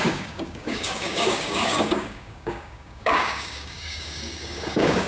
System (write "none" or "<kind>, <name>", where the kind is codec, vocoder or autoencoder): codec, DAC